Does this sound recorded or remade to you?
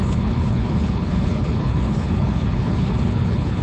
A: remade